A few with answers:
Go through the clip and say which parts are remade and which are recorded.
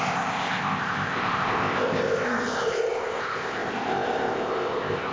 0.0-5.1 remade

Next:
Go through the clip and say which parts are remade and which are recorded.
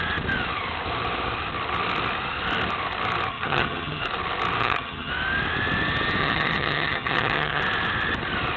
0.0-3.3 recorded; 3.3-4.0 remade; 4.0-4.6 recorded; 4.6-5.1 remade; 5.1-6.2 recorded; 6.2-7.6 remade; 7.6-8.6 recorded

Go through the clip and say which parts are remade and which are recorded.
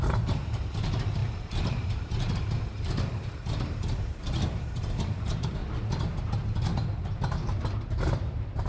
0.0-5.6 remade; 5.6-6.2 recorded; 6.2-8.7 remade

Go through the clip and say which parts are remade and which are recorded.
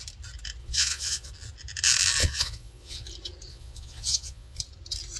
0.0-0.6 recorded; 0.6-1.3 remade; 1.3-2.2 recorded; 2.2-3.1 remade; 3.1-3.5 recorded; 3.5-4.6 remade; 4.6-5.2 recorded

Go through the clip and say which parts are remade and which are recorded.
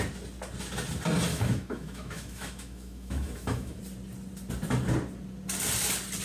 0.0-1.3 recorded; 1.3-3.8 remade; 3.8-6.2 recorded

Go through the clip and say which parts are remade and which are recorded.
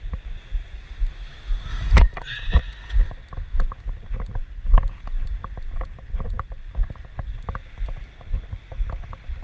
0.0-1.7 recorded; 1.7-3.1 remade; 3.1-9.4 recorded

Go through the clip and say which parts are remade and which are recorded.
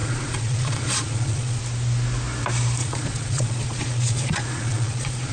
0.0-1.6 remade; 1.6-2.8 recorded; 2.8-5.3 remade